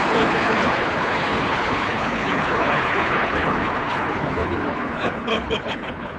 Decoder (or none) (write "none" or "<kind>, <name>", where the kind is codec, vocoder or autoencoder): codec, HILCodec